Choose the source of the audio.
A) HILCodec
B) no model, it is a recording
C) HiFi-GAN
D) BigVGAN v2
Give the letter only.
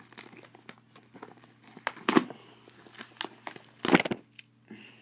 B